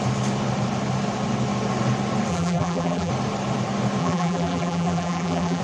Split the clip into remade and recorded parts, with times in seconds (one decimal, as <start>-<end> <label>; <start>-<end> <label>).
0.0-2.3 recorded; 2.3-3.1 remade; 3.1-4.0 recorded; 4.0-5.6 remade